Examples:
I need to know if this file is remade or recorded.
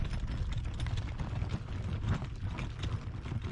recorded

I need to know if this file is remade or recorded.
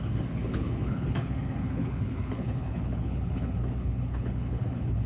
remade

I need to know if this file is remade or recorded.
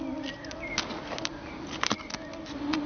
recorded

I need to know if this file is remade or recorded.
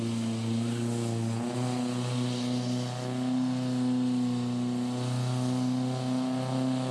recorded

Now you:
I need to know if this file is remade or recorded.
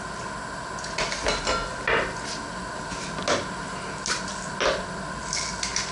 recorded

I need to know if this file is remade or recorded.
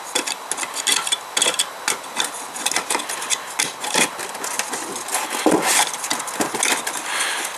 recorded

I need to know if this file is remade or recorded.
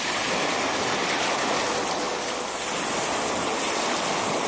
recorded